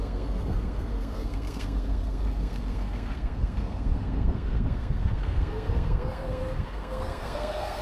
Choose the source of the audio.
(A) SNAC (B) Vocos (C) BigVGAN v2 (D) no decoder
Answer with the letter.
A